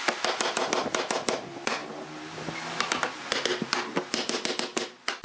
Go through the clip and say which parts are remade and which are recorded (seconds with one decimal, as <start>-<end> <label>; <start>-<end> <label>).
0.0-5.2 recorded